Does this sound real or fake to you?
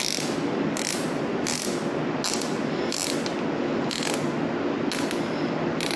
real